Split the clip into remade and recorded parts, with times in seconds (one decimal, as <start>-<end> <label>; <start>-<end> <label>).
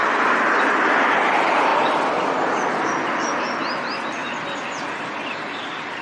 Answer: 0.0-6.0 recorded